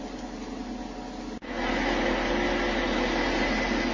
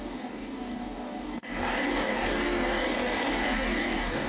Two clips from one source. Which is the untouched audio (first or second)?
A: first